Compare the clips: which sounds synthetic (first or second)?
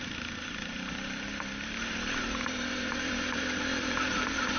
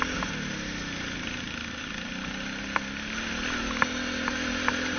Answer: first